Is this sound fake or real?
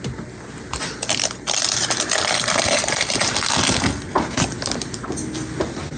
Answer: real